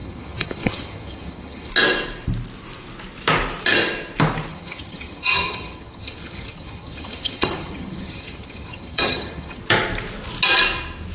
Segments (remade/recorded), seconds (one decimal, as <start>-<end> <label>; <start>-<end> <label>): 0.0-1.7 remade; 1.7-4.5 recorded; 4.5-9.6 remade; 9.6-11.1 recorded